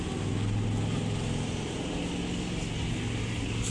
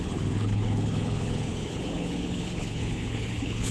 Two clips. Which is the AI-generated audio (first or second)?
second